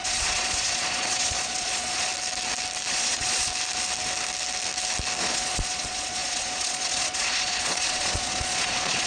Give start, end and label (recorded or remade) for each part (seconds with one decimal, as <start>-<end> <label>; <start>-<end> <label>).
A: 0.0-2.1 remade; 2.1-2.9 recorded; 2.9-3.5 remade; 3.5-5.2 recorded; 5.2-9.1 remade